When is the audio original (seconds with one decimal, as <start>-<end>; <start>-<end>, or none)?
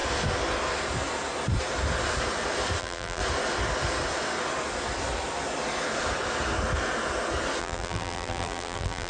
0.0-2.8; 3.2-7.6